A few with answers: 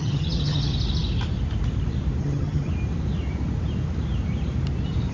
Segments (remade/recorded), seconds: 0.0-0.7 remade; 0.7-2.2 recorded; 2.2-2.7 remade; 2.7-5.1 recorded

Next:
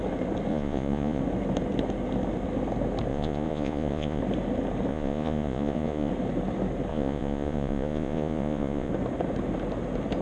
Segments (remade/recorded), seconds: 0.0-0.5 recorded; 0.5-1.2 remade; 1.2-3.1 recorded; 3.1-4.2 remade; 4.2-4.9 recorded; 4.9-6.1 remade; 6.1-6.9 recorded; 6.9-8.9 remade; 8.9-10.2 recorded

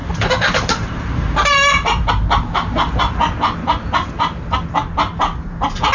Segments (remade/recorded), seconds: 0.0-2.1 remade; 2.1-5.9 recorded

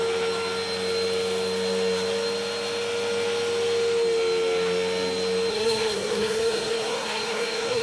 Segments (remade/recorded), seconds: 0.0-5.5 recorded; 5.5-7.8 remade

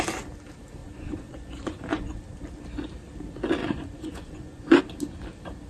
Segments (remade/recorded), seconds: 0.0-0.8 recorded; 0.8-2.2 remade; 2.2-3.6 recorded; 3.6-4.8 remade; 4.8-5.7 recorded

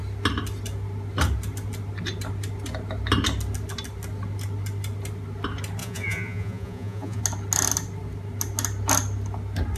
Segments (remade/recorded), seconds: 0.0-5.8 recorded; 5.8-7.2 remade; 7.2-9.8 recorded